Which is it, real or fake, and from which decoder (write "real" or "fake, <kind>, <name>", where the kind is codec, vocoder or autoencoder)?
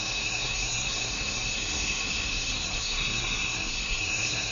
fake, codec, SNAC